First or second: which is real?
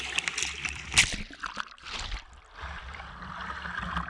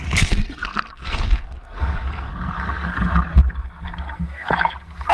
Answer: first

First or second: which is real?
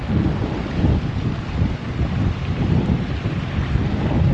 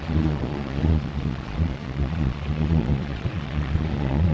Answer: first